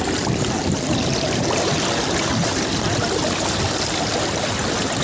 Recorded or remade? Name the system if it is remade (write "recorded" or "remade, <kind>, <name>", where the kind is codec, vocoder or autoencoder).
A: recorded